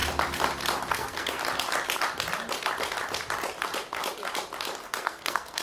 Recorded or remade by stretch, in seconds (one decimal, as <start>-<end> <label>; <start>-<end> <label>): 0.0-0.9 recorded; 0.9-1.4 remade; 1.4-4.8 recorded; 4.8-5.6 remade